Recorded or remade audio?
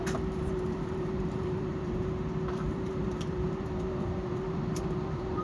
remade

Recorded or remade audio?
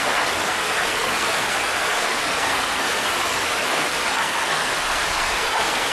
remade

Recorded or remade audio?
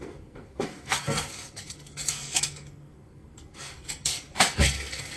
remade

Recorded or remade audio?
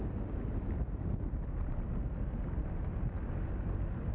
recorded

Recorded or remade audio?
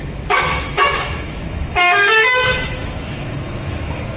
remade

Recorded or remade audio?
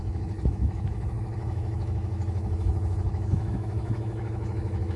remade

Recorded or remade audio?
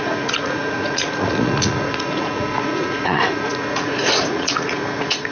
remade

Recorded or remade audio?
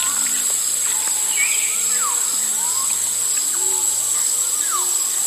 recorded